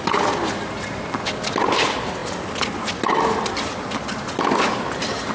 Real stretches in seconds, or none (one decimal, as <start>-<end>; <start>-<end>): 0.0-5.3